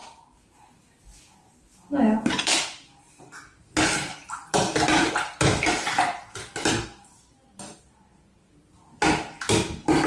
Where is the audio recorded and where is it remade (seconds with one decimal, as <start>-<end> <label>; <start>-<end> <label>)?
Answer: 0.0-3.2 remade; 3.2-4.1 recorded; 4.1-5.8 remade; 5.8-10.1 recorded